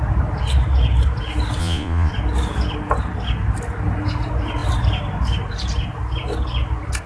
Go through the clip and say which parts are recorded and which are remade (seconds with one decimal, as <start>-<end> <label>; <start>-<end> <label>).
0.0-1.6 recorded; 1.6-2.1 remade; 2.1-7.1 recorded